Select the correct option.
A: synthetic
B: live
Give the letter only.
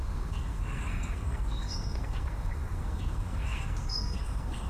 A